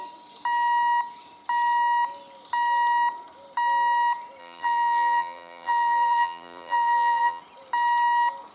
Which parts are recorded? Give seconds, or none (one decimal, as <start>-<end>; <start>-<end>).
0.0-4.4; 7.4-8.5